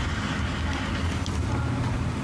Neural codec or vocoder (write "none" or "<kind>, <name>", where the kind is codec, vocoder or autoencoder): none